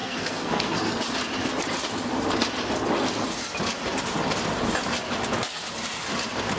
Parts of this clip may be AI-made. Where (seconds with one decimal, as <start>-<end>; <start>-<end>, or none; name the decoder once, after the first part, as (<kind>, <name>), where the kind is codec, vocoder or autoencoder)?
0.0-0.9 (codec, SNAC)